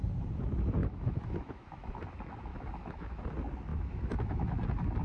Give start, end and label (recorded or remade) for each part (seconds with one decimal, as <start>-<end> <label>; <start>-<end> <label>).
0.0-0.8 recorded; 0.8-1.9 remade; 1.9-2.5 recorded; 2.5-3.2 remade; 3.2-3.7 recorded; 3.7-4.6 remade; 4.6-5.0 recorded